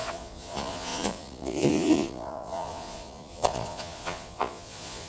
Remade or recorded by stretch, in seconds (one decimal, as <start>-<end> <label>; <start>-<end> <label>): 0.0-5.1 remade